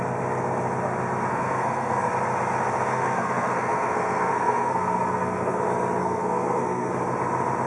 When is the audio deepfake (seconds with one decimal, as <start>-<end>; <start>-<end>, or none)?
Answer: 1.3-2.1; 2.9-5.6; 6.0-6.9